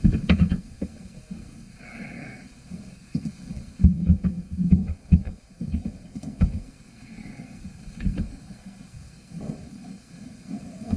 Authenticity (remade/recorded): remade